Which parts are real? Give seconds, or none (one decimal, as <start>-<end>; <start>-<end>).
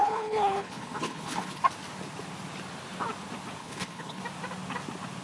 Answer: 1.6-3.6; 4.2-5.2